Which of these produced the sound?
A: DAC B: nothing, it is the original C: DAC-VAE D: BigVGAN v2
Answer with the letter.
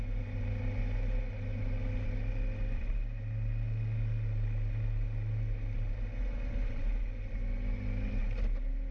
B